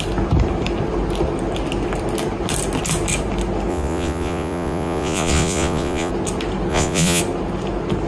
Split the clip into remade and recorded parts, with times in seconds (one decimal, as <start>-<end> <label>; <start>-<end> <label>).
0.0-3.7 recorded; 3.7-6.1 remade; 6.1-6.7 recorded; 6.7-7.2 remade; 7.2-8.1 recorded